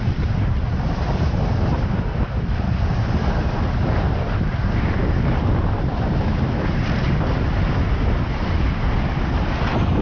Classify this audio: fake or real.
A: real